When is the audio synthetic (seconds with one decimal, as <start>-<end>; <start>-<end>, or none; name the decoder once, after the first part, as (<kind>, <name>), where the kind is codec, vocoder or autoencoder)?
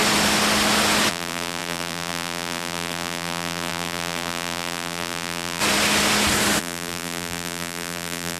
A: 1.1-5.6 (vocoder, BigVGAN v2); 6.6-8.4